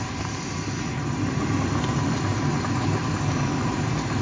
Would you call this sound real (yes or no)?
yes